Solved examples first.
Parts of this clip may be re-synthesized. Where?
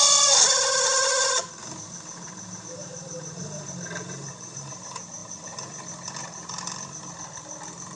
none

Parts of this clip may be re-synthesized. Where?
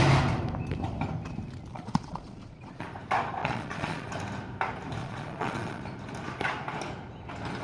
1.7-2.9 (vocoder, Vocos); 3.4-4.1; 5.0-5.8